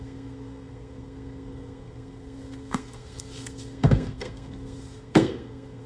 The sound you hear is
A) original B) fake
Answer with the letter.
B